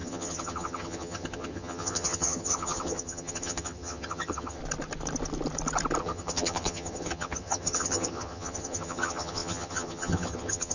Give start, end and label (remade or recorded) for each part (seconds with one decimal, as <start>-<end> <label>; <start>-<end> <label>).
0.0-4.6 remade; 4.6-6.0 recorded; 6.0-10.7 remade